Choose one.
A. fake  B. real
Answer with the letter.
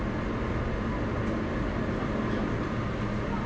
B